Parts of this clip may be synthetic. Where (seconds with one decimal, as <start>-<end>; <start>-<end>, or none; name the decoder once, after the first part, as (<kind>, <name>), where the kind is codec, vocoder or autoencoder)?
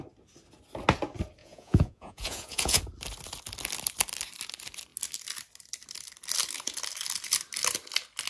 1.4-2.8 (vocoder, Vocos)